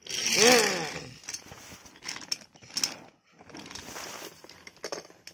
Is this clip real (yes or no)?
yes